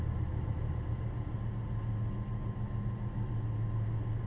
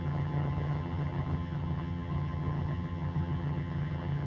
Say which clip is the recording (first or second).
first